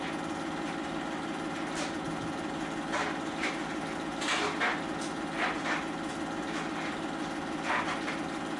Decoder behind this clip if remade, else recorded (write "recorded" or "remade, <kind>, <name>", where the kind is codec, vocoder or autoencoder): recorded